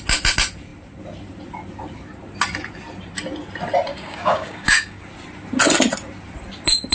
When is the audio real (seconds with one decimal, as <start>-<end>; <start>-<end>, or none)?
0.0-3.9; 5.0-6.9